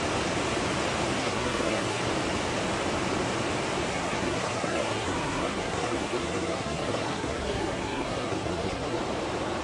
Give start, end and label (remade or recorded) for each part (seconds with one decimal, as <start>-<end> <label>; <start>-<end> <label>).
0.0-1.2 recorded; 1.2-2.0 remade; 2.0-3.9 recorded; 3.9-9.0 remade; 9.0-9.6 recorded